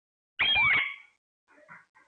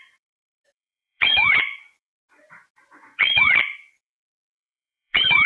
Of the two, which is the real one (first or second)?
first